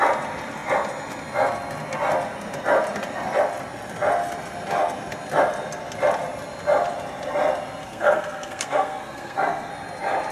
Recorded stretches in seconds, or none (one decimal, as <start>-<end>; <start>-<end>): 0.0-7.8; 9.7-10.3